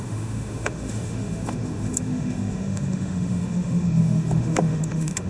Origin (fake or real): fake